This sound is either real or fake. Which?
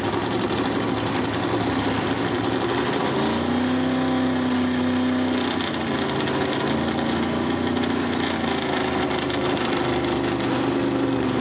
real